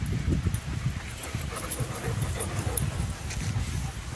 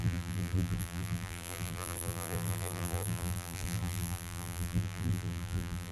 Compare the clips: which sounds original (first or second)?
first